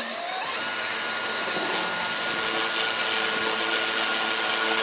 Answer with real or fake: real